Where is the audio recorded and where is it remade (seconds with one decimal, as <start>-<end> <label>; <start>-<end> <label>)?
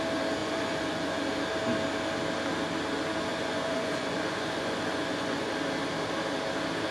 0.0-0.4 recorded; 0.4-1.2 remade; 1.2-3.3 recorded; 3.3-5.5 remade; 5.5-6.9 recorded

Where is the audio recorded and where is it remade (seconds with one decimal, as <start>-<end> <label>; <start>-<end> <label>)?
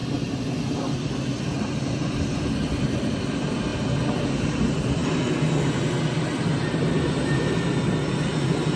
0.0-8.8 recorded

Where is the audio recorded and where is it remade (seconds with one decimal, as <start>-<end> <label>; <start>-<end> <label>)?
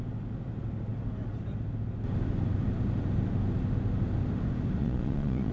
0.0-4.8 recorded; 4.8-5.5 remade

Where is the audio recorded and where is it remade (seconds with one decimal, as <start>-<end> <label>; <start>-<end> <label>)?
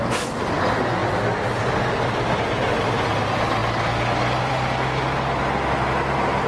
0.0-6.5 recorded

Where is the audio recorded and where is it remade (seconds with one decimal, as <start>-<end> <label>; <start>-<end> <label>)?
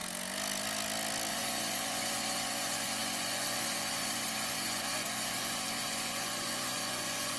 0.0-1.3 recorded; 1.3-7.4 remade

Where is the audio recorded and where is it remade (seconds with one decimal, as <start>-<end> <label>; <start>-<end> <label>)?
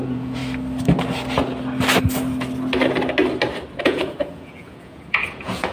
0.0-0.4 remade; 0.4-3.8 recorded; 3.8-5.7 remade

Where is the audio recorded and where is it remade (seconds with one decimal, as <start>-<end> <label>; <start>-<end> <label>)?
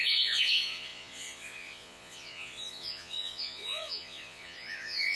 0.0-5.2 remade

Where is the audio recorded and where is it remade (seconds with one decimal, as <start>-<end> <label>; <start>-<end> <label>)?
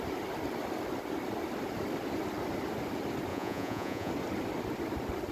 0.0-3.3 recorded; 3.3-4.1 remade; 4.1-5.3 recorded